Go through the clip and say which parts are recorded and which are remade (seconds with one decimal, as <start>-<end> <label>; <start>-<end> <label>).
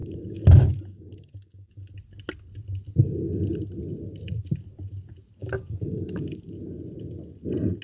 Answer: 0.0-1.9 remade; 1.9-5.4 recorded; 5.4-6.5 remade; 6.5-7.8 recorded